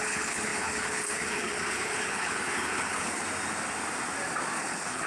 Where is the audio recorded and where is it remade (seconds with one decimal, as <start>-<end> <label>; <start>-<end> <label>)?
0.0-3.2 remade; 3.2-4.6 recorded; 4.6-5.1 remade